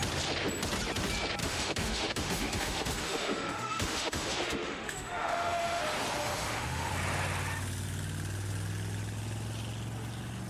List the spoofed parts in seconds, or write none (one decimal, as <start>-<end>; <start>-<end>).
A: 1.4-5.8; 6.2-6.9